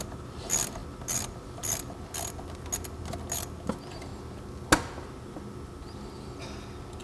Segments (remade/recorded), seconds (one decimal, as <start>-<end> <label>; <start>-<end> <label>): 0.0-7.0 recorded